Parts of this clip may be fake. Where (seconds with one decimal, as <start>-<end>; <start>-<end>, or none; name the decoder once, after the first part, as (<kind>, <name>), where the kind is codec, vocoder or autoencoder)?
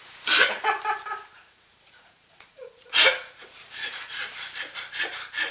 1.4-4.2 (vocoder, Vocos)